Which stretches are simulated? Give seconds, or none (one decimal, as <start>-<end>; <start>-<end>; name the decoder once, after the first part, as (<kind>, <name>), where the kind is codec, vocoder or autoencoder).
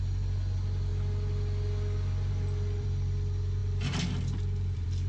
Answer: 0.0-0.9 (vocoder, BigVGAN v2); 2.3-5.1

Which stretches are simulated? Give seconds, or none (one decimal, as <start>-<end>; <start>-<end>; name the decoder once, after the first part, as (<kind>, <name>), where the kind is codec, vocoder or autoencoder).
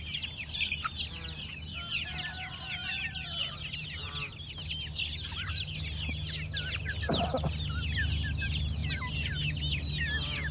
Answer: none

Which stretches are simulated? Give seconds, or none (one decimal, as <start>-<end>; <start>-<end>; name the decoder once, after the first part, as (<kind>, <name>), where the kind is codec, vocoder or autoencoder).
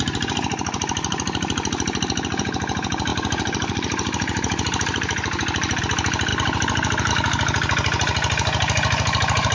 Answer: 3.1-5.8 (vocoder, BigVGAN v2); 6.3-7.1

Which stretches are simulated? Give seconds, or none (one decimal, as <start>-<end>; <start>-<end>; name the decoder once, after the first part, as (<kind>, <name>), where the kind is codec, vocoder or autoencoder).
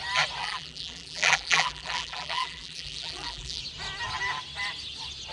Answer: 0.4-3.6 (vocoder, BigVGAN v2)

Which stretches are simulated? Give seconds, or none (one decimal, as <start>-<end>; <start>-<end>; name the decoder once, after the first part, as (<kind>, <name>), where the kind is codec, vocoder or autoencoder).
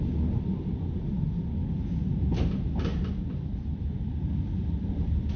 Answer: 0.5-1.2 (vocoder, BigVGAN v2); 2.9-4.1